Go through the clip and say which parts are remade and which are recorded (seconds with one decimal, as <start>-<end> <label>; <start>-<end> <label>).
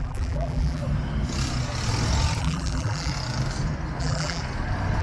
0.0-0.8 remade; 0.8-2.4 recorded; 2.4-3.1 remade; 3.1-4.0 recorded; 4.0-4.4 remade; 4.4-5.0 recorded